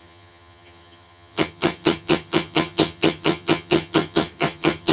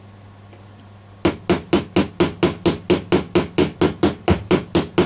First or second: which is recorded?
second